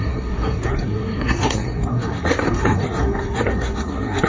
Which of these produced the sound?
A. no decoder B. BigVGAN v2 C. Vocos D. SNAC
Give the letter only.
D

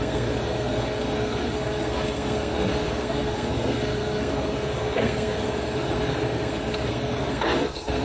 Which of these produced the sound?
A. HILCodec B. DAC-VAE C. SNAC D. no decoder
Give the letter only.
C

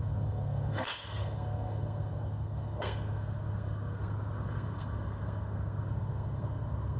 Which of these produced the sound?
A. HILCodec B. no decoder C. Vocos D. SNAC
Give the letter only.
D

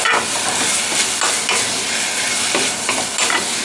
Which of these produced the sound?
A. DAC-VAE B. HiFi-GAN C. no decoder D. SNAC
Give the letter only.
C